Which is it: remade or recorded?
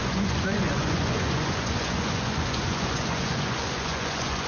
remade